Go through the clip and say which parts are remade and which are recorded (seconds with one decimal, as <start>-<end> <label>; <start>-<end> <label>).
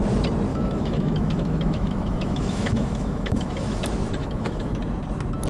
0.0-0.5 recorded; 0.5-3.8 remade; 3.8-4.2 recorded; 4.2-4.8 remade; 4.8-5.5 recorded